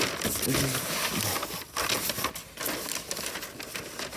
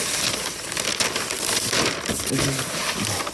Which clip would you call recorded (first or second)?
first